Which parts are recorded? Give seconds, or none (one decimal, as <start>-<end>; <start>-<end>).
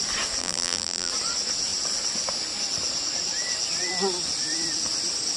0.0-0.4; 1.1-5.4